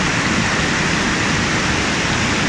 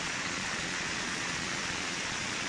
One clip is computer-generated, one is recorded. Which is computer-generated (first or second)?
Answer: second